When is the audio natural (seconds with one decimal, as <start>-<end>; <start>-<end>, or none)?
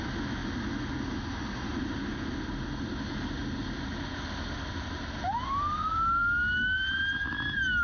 0.0-7.8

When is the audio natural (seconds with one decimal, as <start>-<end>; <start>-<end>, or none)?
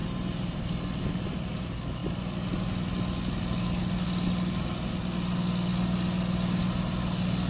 0.6-7.5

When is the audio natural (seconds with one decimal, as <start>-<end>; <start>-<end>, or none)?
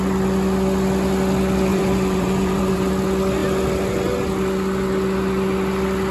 0.0-1.7; 2.9-6.1